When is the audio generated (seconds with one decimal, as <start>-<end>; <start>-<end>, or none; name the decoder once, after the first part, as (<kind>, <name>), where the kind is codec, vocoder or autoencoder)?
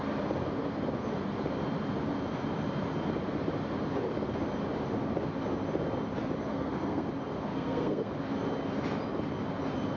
6.5-7.1 (codec, SNAC); 7.5-8.1